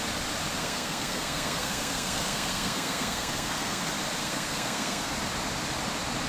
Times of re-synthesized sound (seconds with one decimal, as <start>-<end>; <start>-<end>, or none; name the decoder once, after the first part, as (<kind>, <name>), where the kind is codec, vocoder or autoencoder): 0.6-3.8 (codec, SNAC); 4.2-5.1